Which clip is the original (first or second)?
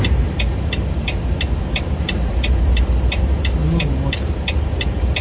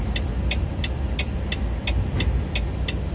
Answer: second